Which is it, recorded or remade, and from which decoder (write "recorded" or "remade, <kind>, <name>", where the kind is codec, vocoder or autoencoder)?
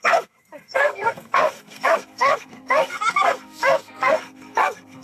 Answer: remade, codec, SNAC